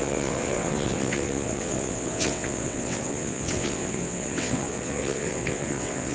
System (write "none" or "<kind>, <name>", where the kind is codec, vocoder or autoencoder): vocoder, WaveNeXt